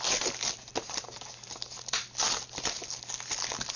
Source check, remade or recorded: recorded